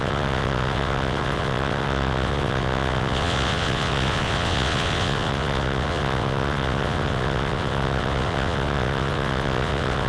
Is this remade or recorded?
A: remade